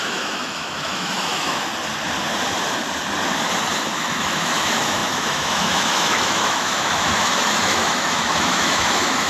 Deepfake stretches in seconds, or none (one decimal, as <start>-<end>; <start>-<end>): 0.0-1.7; 3.8-9.3